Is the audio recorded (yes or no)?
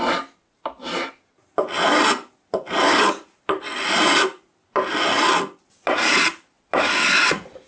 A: yes